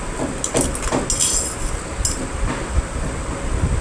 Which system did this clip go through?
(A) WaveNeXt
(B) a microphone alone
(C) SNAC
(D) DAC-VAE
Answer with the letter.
B